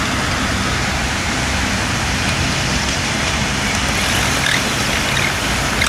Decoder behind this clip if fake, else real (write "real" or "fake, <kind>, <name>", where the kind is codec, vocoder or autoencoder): real